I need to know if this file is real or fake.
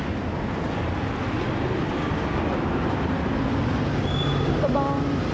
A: real